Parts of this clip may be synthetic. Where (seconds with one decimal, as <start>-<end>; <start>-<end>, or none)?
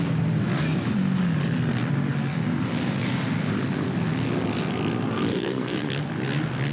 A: 5.3-5.9